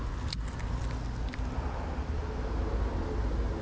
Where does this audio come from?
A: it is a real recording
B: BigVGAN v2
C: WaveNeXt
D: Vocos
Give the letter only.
A